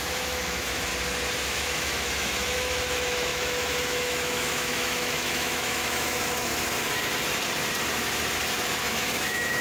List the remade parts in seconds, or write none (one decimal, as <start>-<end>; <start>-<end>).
0.0-0.9; 1.5-6.5; 8.8-9.6